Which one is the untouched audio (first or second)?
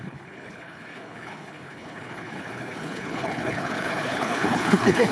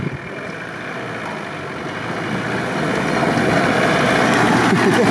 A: second